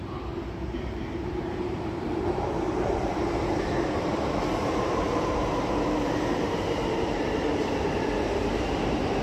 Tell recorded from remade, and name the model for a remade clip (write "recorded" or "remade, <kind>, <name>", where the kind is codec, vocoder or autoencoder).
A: remade, vocoder, BigVGAN v2